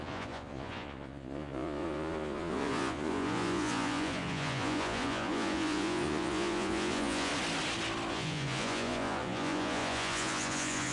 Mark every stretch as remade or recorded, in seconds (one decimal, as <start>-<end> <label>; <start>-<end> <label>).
0.0-7.3 remade; 7.3-8.1 recorded; 8.1-10.9 remade